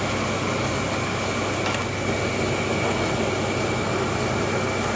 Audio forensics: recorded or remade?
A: recorded